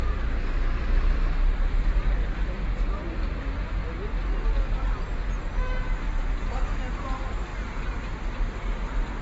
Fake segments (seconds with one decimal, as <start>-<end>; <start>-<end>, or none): 2.2-3.0; 7.5-8.2